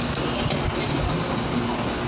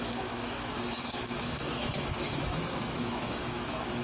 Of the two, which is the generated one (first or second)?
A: second